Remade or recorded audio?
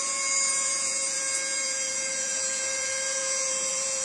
remade